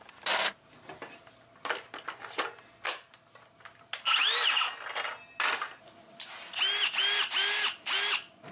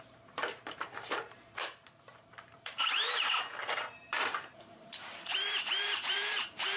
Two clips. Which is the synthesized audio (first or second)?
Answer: second